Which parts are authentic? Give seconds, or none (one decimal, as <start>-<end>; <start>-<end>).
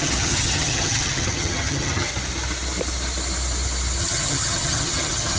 2.1-4.0